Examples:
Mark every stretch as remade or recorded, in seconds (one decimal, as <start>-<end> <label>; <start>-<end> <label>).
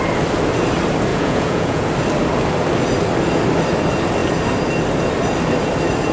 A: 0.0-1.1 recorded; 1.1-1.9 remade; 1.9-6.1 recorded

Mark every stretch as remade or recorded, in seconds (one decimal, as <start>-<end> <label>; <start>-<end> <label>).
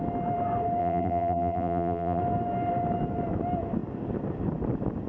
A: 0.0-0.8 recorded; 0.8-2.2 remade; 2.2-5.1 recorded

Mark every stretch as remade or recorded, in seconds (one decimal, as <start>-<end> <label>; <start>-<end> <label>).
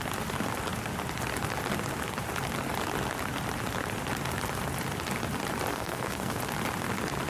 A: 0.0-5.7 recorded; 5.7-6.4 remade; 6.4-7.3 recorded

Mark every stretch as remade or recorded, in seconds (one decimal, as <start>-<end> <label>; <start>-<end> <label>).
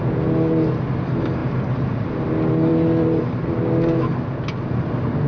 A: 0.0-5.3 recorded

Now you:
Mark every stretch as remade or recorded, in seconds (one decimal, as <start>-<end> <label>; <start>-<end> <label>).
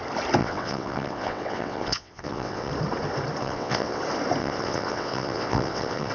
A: 0.0-0.4 recorded; 0.4-2.7 remade; 2.7-3.4 recorded; 3.4-4.0 remade; 4.0-4.4 recorded; 4.4-6.1 remade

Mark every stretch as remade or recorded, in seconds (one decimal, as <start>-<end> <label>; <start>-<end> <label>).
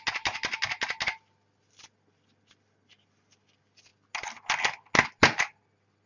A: 0.0-6.1 recorded